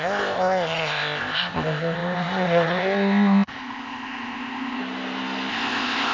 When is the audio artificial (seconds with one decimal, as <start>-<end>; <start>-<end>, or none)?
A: 0.0-4.8; 5.5-6.1